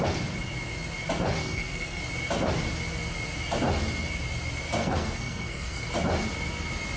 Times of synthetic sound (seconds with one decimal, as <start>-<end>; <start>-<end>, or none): 1.4-2.0; 4.8-5.9